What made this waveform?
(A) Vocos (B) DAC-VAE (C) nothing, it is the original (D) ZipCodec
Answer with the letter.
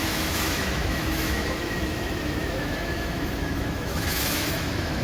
B